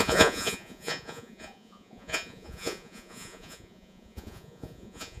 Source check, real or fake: fake